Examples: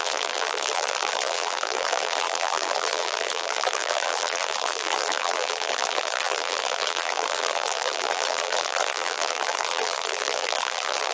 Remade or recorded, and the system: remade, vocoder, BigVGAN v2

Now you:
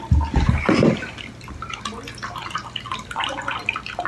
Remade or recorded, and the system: recorded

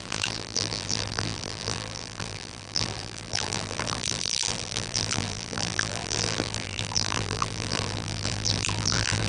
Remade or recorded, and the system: remade, vocoder, BigVGAN v2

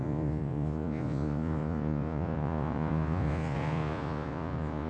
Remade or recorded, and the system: remade, vocoder, Vocos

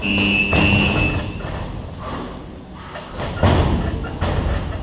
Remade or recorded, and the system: recorded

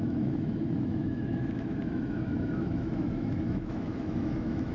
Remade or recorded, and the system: remade, autoencoder, DAC-VAE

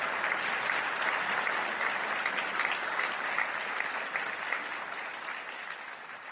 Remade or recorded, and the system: remade, vocoder, BigVGAN v2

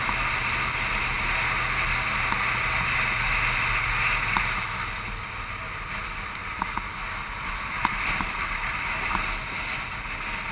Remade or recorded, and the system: recorded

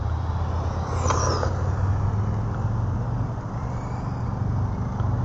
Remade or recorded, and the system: recorded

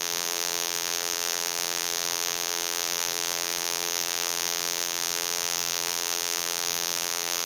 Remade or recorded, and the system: remade, vocoder, BigVGAN v2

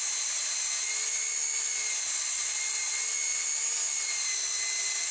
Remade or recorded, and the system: recorded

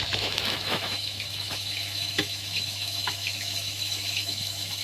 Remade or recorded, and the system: remade, autoencoder, DAC-VAE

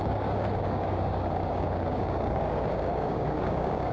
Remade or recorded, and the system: remade, codec, DAC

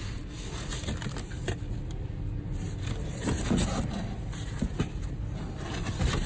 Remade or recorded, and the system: recorded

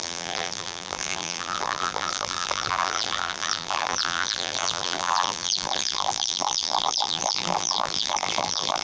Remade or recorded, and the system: remade, vocoder, BigVGAN v2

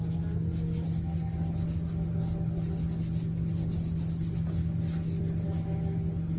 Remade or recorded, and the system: recorded